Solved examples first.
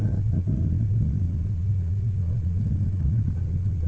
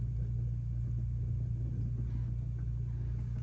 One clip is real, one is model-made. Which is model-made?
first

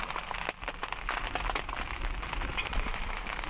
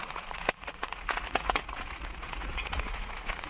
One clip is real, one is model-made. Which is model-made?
second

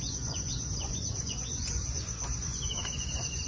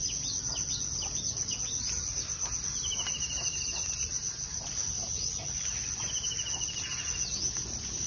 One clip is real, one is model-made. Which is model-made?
first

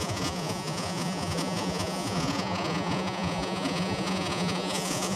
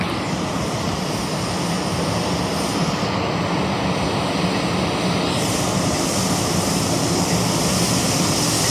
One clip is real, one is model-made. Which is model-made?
first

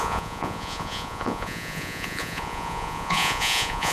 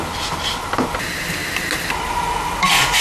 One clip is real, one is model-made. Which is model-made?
first